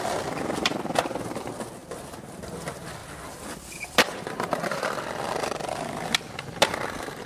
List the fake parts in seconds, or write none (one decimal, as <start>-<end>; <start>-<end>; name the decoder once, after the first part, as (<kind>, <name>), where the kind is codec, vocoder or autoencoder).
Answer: none